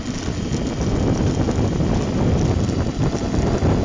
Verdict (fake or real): real